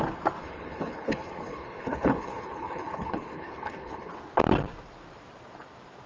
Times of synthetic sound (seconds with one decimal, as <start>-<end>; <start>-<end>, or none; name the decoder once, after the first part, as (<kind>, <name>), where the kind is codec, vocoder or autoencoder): 0.4-4.1 (codec, HILCodec)